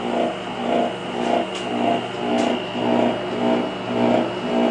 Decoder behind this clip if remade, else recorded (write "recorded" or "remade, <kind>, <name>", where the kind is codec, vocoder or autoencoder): recorded